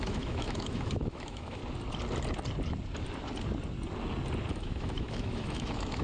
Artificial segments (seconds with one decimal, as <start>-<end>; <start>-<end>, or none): 0.0-1.6; 4.5-6.0